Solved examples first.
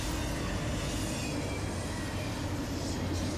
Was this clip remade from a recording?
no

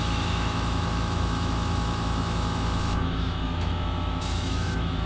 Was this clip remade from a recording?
yes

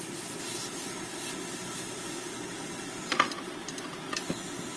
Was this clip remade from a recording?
no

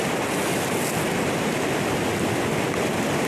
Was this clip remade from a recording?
no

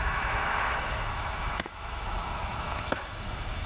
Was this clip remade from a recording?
yes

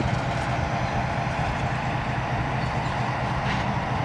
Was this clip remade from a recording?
no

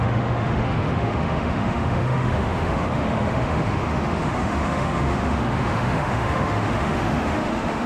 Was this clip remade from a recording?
yes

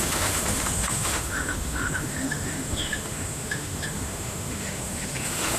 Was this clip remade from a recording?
yes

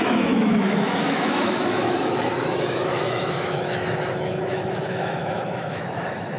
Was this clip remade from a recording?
yes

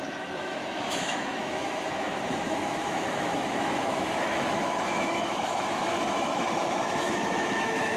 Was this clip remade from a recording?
yes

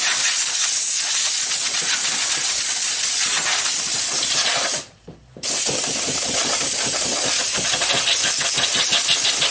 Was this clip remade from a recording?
no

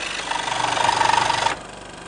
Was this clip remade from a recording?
no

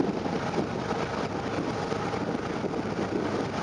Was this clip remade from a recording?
no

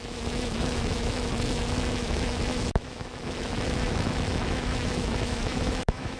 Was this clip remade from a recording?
yes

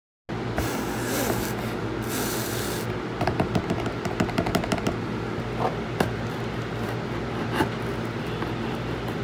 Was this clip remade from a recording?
no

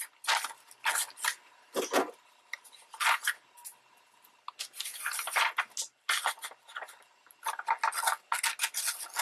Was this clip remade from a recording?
no